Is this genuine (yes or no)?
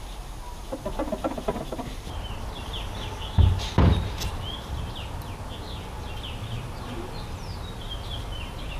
yes